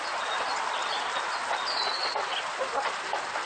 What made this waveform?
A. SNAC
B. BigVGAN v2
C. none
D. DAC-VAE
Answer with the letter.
C